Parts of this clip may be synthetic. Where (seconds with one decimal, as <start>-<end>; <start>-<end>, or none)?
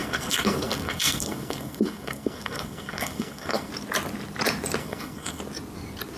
0.0-3.7; 4.8-5.4